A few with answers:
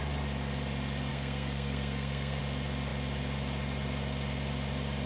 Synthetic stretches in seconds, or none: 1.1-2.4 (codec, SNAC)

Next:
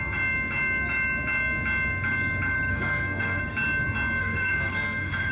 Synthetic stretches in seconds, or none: 2.7-3.4 (codec, SNAC); 4.2-5.3

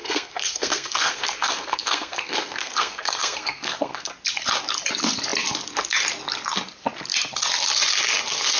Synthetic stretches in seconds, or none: 0.0-4.1 (codec, SNAC)